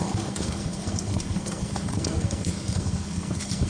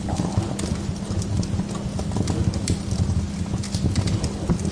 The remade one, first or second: first